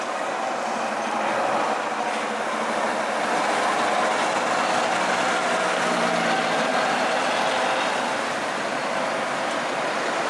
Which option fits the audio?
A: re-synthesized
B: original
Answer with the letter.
B